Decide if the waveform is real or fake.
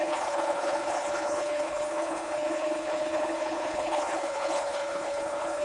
fake